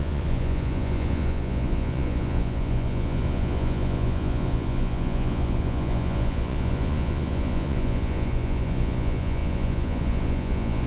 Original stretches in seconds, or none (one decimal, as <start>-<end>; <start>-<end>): none